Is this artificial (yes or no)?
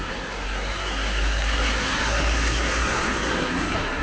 yes